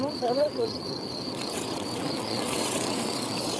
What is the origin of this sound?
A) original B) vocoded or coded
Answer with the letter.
B